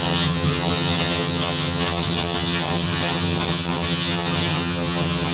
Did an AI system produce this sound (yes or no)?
yes